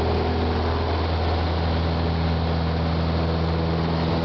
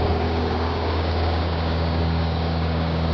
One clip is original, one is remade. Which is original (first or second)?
first